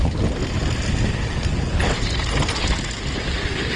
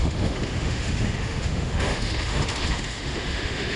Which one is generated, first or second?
second